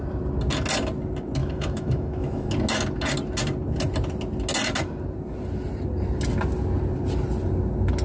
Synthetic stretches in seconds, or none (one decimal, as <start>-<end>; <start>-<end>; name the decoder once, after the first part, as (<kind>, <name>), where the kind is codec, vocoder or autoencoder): 1.4-2.5 (autoencoder, DAC-VAE)